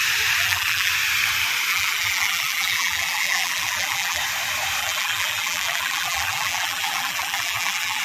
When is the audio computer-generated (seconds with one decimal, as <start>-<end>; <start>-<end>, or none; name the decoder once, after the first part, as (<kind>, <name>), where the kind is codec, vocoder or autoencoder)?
0.4-0.9 (vocoder, BigVGAN v2); 1.7-4.2; 4.8-8.0